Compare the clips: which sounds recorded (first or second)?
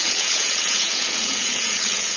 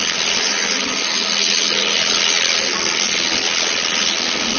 second